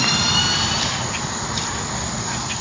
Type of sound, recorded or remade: remade